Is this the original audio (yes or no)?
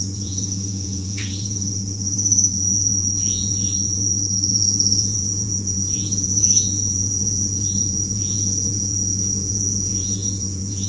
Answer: no